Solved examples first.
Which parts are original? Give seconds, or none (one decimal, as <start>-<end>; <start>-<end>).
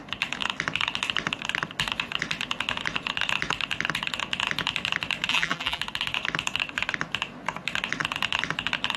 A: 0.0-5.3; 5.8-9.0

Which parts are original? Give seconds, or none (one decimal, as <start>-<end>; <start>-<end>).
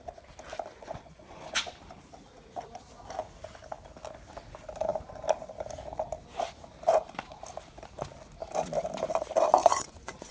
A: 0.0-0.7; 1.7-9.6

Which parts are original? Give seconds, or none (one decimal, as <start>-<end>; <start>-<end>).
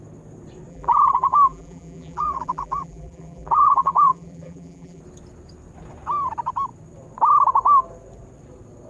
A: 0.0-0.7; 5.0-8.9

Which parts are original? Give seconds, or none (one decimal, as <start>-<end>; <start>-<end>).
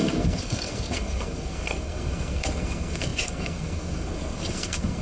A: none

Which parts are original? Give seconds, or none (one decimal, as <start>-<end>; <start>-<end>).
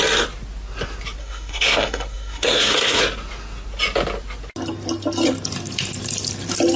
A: 0.0-1.2; 3.0-6.8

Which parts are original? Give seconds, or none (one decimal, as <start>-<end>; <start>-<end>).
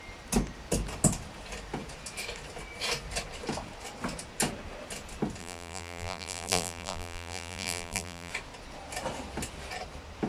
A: 0.0-5.4; 8.3-10.3